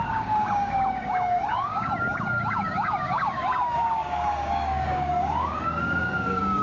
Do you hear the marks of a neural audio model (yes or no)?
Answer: yes